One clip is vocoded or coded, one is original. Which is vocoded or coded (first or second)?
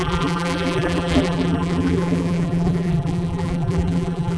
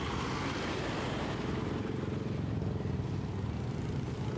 first